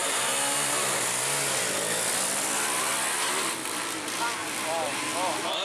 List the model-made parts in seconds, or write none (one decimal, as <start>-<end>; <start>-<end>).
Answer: none

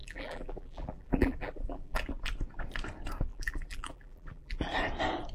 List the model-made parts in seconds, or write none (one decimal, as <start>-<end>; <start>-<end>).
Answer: 0.0-2.1; 3.3-4.7

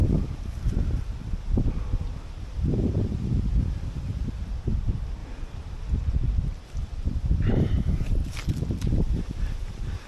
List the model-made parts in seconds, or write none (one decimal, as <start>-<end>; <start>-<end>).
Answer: 4.6-5.2; 5.9-10.1